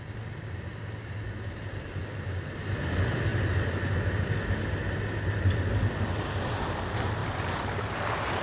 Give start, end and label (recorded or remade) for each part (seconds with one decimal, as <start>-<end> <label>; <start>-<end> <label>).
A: 0.0-8.4 recorded